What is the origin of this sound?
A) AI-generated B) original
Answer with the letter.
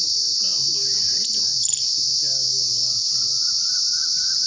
B